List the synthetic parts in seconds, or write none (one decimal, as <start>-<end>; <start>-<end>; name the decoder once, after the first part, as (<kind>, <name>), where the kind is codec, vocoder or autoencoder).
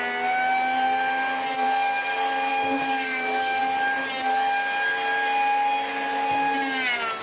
2.5-3.6 (codec, DAC)